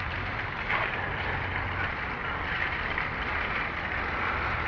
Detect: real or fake real